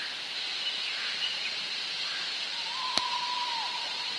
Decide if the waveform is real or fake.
fake